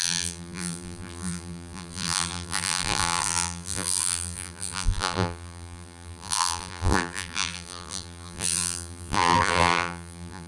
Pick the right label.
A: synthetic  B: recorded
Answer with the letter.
A